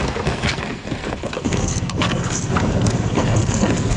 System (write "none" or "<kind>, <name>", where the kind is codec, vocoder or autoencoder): codec, SNAC